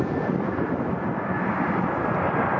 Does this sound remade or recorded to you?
recorded